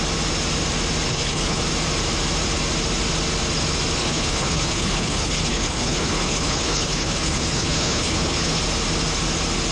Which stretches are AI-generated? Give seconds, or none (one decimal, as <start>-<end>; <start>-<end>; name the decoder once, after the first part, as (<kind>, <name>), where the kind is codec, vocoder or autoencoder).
1.1-1.6 (codec, HILCodec); 4.0-8.6